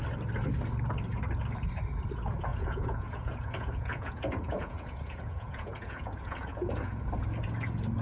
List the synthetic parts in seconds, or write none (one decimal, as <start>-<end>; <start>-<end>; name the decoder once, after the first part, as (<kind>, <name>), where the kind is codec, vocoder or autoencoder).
2.5-7.1 (vocoder, Vocos)